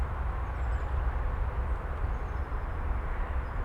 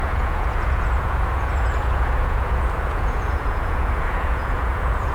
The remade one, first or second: second